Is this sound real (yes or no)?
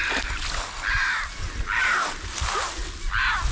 yes